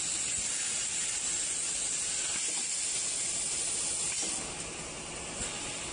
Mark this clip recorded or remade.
recorded